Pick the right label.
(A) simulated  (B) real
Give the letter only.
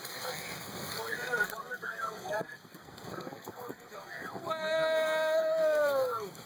A